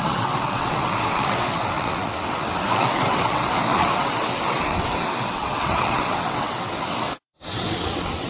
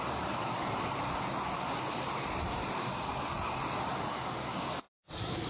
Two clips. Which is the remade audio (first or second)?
first